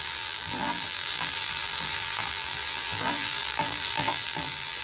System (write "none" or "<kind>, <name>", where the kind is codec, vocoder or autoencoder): vocoder, BigVGAN v2